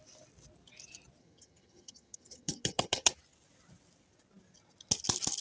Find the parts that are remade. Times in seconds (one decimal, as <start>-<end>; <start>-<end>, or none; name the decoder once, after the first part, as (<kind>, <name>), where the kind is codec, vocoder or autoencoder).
1.2-3.1 (vocoder, HiFi-GAN)